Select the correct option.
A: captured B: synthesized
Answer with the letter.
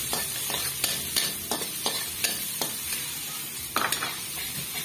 B